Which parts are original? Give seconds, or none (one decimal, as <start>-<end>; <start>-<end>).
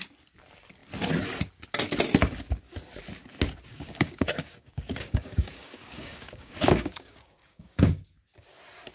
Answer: 0.0-3.7; 8.0-8.9